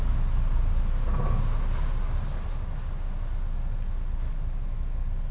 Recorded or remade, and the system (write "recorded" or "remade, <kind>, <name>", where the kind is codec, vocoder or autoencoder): recorded